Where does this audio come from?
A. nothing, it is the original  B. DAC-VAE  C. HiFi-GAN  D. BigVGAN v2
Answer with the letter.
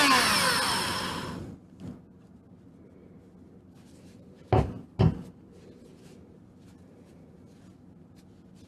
A